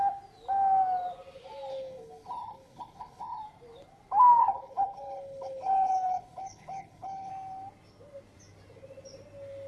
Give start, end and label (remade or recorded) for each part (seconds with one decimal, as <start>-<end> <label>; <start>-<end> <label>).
0.0-1.7 recorded; 1.7-3.4 remade; 3.4-4.4 recorded; 4.4-7.3 remade; 7.3-9.7 recorded